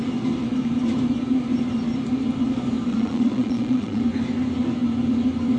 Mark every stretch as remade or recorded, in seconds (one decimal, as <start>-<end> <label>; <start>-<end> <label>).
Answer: 0.0-2.9 recorded; 2.9-4.0 remade; 4.0-5.6 recorded